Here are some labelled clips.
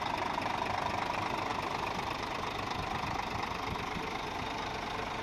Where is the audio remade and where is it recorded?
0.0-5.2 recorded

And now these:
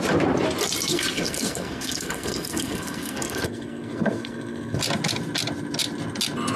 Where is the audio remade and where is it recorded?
0.0-0.9 recorded; 0.9-4.8 remade; 4.8-6.6 recorded